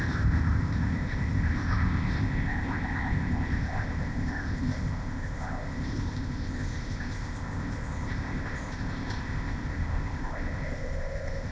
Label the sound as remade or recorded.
remade